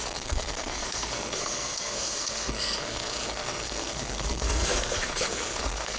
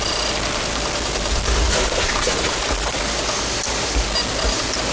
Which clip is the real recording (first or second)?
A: second